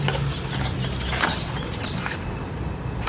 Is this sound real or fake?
real